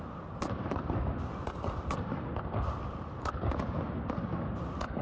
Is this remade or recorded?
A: recorded